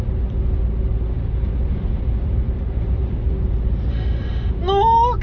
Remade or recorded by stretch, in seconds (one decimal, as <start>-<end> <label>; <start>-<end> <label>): 0.0-3.9 recorded; 3.9-4.5 remade; 4.5-5.2 recorded